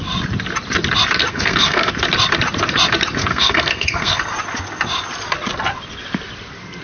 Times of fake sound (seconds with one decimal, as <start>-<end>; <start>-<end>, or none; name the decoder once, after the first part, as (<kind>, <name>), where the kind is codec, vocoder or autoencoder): 1.3-1.9 (codec, SNAC); 3.2-4.2